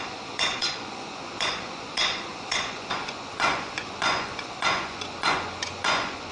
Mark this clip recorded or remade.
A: remade